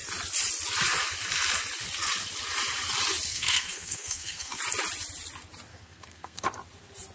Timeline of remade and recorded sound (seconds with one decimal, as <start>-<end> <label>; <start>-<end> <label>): 0.0-3.3 recorded; 3.3-4.6 remade; 4.6-5.7 recorded; 5.7-6.4 remade; 6.4-7.1 recorded